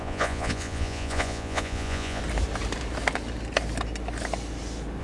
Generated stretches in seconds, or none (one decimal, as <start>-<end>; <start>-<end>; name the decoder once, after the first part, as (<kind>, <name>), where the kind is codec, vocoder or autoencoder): 0.0-2.2 (vocoder, Vocos)

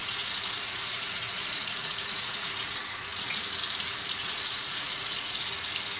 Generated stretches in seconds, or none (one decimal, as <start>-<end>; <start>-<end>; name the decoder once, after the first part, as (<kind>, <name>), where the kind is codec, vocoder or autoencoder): 0.0-3.4 (vocoder, Vocos); 4.2-5.5

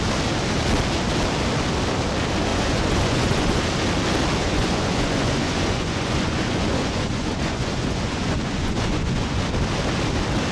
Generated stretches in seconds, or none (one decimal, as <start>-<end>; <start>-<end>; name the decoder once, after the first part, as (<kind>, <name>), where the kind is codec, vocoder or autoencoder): 2.5-3.6 (vocoder, Vocos); 4.4-9.4

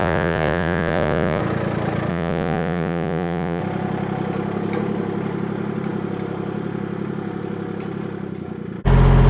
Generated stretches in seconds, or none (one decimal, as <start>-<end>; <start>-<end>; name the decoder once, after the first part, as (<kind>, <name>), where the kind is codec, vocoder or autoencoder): 0.0-1.4 (vocoder, Vocos); 2.1-3.6

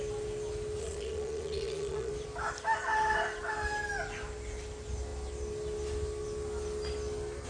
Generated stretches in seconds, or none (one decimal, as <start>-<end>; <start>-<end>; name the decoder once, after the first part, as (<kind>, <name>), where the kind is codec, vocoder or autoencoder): 0.8-2.1 (vocoder, Vocos)